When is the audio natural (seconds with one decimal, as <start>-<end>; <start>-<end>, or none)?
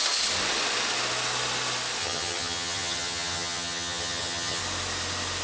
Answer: 0.0-2.0; 4.6-5.4